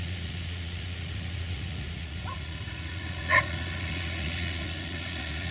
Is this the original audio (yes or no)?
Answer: no